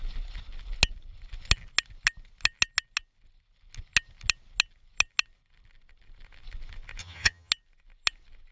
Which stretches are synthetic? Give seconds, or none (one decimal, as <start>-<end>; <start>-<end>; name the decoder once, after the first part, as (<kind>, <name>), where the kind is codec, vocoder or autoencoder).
7.0-7.5 (vocoder, HiFi-GAN)